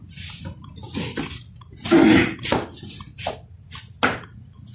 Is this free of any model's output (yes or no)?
yes